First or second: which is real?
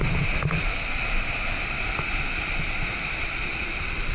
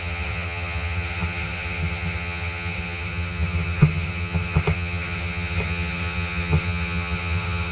first